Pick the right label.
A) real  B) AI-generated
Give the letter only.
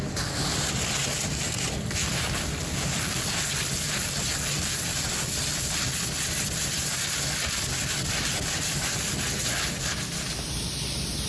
A